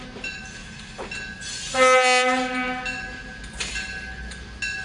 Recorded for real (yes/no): yes